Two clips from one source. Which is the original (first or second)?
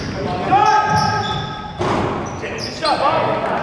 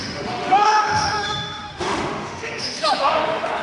first